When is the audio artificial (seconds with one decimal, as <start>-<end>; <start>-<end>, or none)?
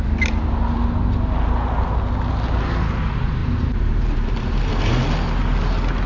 3.4-4.7